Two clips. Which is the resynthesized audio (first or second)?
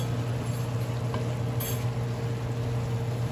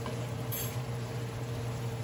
second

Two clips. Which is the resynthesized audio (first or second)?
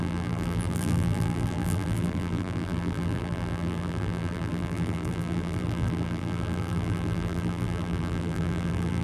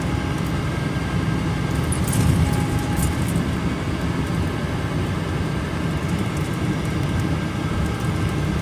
first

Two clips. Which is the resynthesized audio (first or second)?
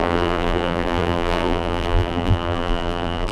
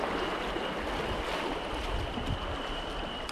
first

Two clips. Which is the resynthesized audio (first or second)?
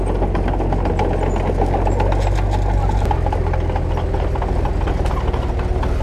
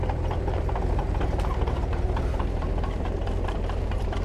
second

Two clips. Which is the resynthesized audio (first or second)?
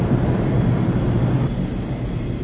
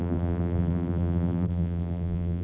second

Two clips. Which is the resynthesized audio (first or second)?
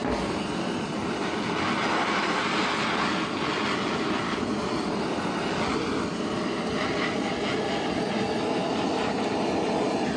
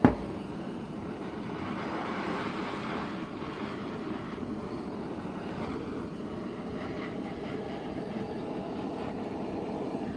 second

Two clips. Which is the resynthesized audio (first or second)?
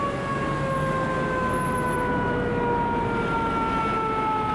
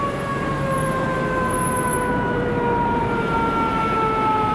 second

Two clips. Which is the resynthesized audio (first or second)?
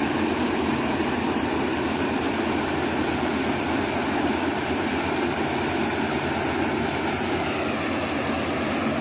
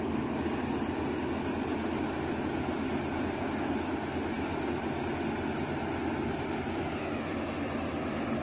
first